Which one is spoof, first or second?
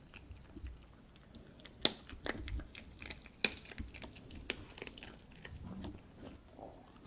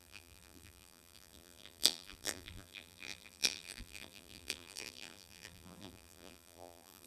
second